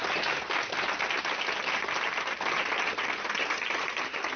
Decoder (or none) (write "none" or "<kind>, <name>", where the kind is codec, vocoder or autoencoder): none